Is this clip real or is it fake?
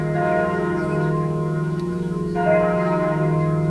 fake